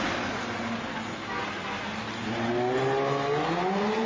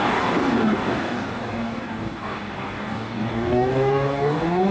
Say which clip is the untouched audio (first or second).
first